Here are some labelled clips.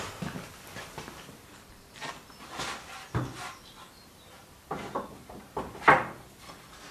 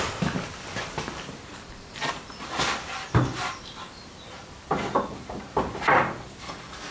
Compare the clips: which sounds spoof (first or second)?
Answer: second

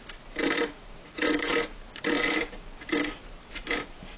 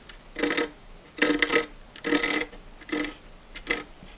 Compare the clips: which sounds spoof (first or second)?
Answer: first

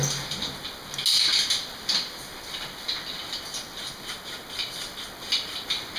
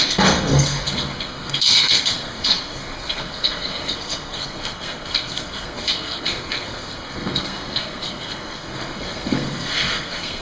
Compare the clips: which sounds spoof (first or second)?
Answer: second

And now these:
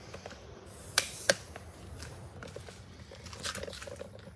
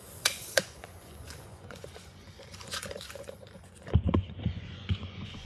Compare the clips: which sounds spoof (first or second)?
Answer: second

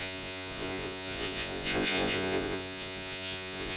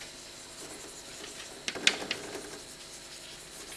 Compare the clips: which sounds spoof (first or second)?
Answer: first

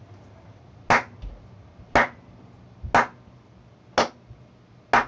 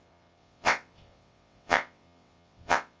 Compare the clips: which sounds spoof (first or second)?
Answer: second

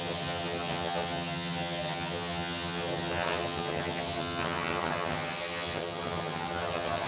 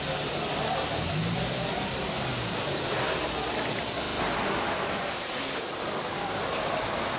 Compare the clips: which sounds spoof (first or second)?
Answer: first